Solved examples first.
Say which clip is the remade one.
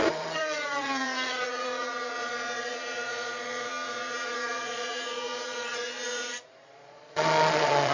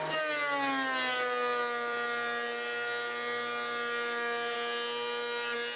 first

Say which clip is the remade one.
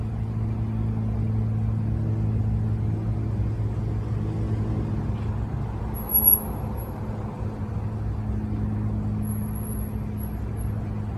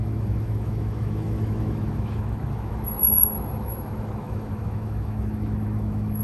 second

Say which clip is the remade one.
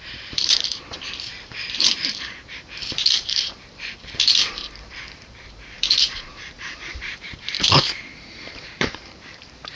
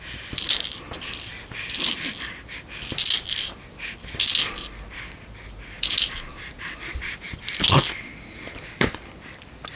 first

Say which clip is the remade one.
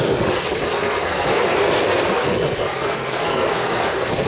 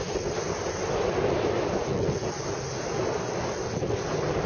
first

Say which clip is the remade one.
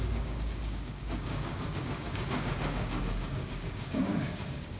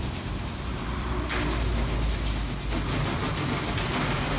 first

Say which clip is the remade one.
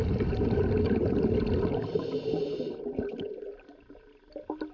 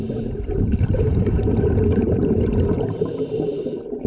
second